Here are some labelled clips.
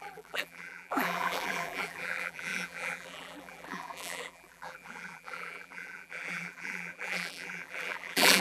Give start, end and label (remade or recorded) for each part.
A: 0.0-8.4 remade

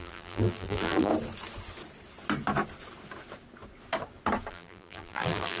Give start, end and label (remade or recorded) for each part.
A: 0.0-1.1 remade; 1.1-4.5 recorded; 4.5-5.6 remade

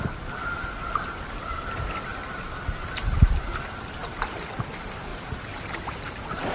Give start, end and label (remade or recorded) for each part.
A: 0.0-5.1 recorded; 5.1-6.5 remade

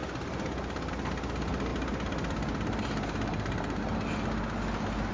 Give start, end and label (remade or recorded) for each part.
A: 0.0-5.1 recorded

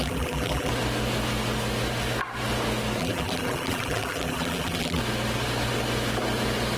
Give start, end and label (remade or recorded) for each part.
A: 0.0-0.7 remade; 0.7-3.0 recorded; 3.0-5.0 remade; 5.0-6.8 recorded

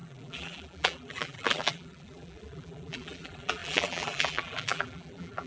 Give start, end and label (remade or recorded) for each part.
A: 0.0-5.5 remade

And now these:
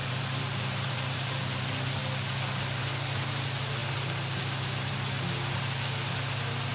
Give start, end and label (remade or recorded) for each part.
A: 0.0-1.6 remade; 1.6-6.7 recorded

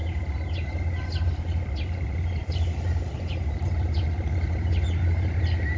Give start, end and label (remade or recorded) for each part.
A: 0.0-3.5 recorded; 3.5-5.8 remade